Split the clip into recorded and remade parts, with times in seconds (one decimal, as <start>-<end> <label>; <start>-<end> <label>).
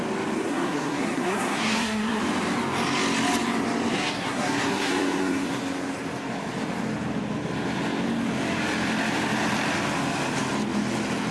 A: 0.0-0.5 recorded; 0.5-2.2 remade; 2.2-3.9 recorded; 3.9-5.6 remade; 5.6-11.3 recorded